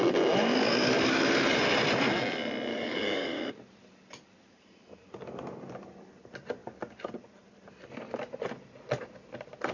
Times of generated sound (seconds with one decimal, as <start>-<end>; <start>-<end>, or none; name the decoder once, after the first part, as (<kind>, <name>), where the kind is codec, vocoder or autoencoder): 2.7-3.5 (codec, DAC)